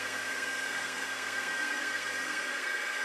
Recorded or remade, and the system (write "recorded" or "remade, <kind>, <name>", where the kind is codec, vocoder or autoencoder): remade, codec, SNAC